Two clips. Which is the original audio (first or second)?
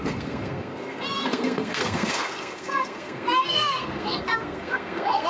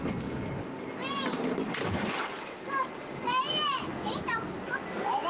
second